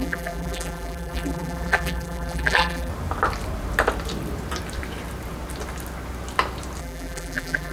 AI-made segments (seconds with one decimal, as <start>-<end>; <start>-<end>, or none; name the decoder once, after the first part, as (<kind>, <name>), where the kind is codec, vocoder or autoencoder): 0.0-2.9 (vocoder, BigVGAN v2); 6.8-7.7